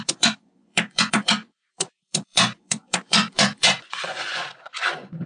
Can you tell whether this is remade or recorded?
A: remade